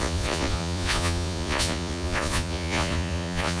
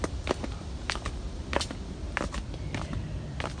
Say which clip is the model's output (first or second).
first